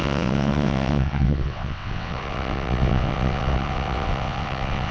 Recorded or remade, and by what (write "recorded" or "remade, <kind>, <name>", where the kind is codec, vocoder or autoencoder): remade, vocoder, WaveNeXt